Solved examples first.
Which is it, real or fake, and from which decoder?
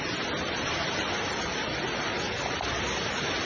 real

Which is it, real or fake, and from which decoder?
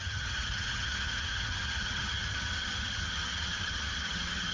fake, vocoder, HiFi-GAN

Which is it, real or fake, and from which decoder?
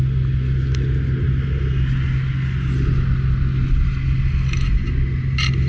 real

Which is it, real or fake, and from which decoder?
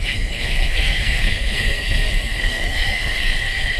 fake, codec, SNAC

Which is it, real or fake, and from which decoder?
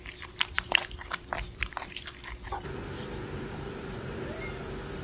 fake, vocoder, BigVGAN v2